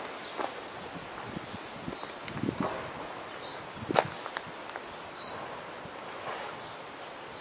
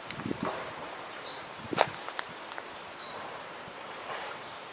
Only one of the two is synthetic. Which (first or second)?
second